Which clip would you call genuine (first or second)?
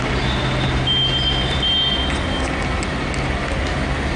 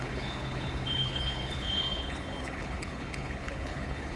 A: first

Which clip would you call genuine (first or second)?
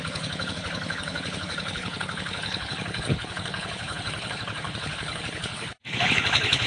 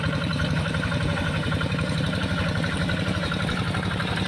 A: second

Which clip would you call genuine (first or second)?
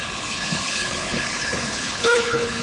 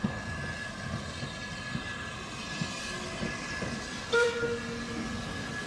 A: second